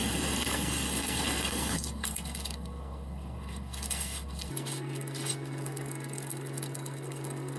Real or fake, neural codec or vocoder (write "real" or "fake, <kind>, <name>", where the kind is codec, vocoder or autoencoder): fake, codec, SNAC